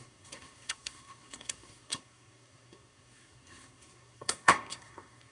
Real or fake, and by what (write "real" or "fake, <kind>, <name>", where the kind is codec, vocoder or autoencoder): fake, codec, SNAC